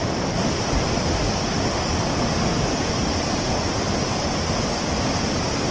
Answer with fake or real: real